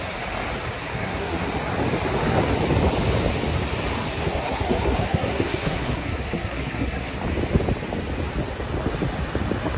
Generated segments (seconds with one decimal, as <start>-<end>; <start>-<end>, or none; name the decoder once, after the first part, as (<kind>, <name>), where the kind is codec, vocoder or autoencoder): 1.0-1.5 (codec, SNAC); 4.2-7.1